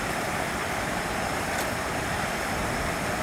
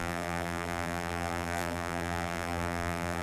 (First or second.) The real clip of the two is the first